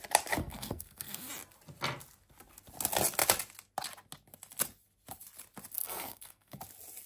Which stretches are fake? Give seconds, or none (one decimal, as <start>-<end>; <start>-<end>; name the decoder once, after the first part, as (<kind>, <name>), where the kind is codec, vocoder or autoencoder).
0.4-1.3 (codec, SNAC); 5.8-6.6